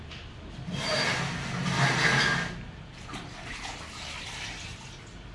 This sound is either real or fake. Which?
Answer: real